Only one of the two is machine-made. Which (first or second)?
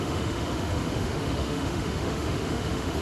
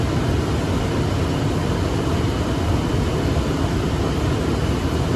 first